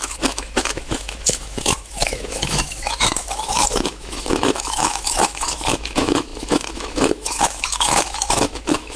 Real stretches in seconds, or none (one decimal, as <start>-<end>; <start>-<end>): none